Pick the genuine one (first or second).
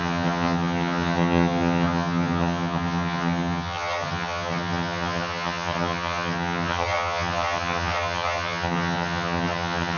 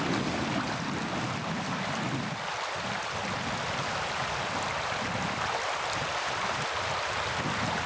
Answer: second